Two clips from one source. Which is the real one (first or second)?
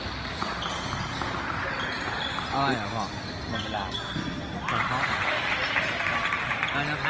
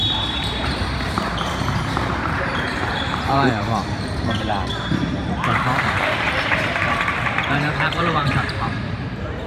first